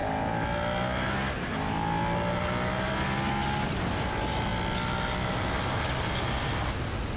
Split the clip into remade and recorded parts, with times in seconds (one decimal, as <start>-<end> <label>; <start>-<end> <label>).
0.0-7.2 recorded